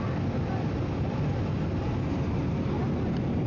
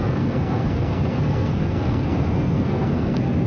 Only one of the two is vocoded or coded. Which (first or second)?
second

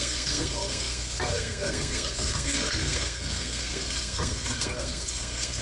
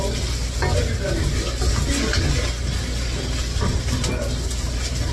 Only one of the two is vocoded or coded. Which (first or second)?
first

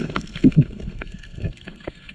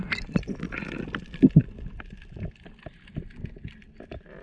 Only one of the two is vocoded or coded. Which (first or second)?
first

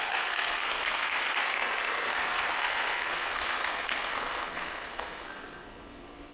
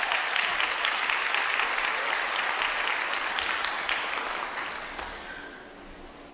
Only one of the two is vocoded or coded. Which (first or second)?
first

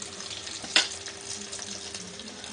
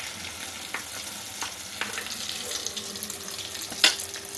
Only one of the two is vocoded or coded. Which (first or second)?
first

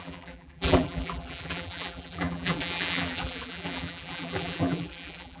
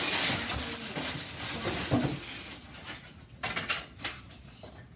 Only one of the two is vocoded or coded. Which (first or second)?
first